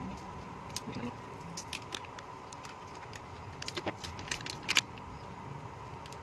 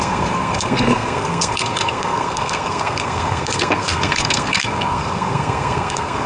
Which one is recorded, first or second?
first